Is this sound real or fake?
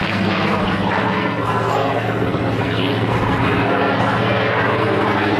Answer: fake